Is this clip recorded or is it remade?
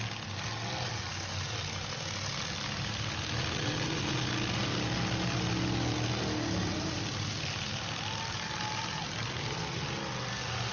recorded